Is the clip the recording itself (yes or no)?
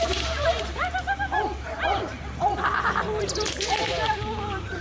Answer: no